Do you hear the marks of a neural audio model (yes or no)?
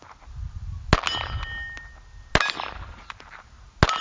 no